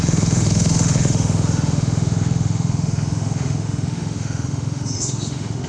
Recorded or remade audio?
remade